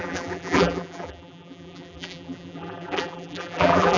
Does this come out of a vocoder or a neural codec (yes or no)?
yes